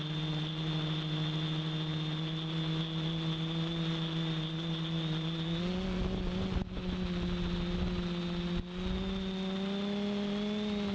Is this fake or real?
real